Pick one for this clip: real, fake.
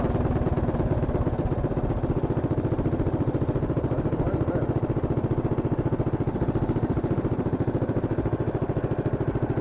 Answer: real